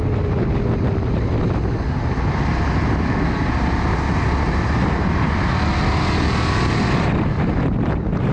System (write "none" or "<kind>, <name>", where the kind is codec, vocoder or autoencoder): none